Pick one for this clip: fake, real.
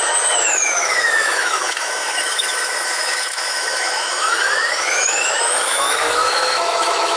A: fake